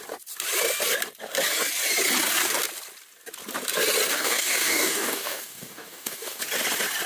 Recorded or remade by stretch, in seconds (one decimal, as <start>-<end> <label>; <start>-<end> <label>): 0.0-4.1 recorded; 4.1-6.4 remade; 6.4-7.1 recorded